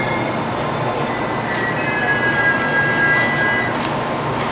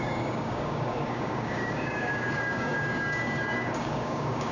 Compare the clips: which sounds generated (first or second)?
second